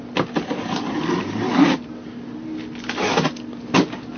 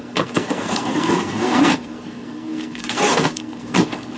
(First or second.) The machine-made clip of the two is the second